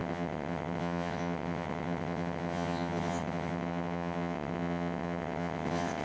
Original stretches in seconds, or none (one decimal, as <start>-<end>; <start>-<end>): none